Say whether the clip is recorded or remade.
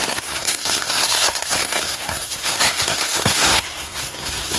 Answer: remade